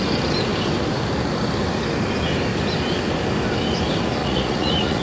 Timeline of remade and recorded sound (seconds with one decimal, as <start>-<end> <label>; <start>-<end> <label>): 0.0-4.2 recorded; 4.2-5.0 remade

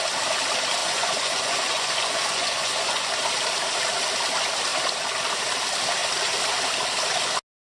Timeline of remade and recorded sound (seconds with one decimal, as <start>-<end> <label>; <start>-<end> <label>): 0.0-0.8 recorded; 0.8-3.1 remade; 3.1-7.8 recorded

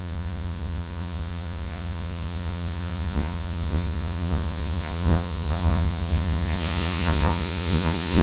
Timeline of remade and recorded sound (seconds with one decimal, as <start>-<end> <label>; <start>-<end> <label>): 0.0-8.2 remade

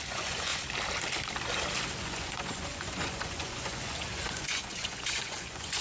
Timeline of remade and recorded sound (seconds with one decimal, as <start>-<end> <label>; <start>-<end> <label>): 0.0-0.5 remade; 0.5-2.0 recorded; 2.0-5.8 remade

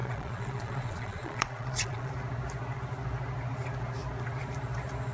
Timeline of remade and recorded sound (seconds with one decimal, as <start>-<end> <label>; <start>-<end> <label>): 0.0-2.1 remade; 2.1-5.1 recorded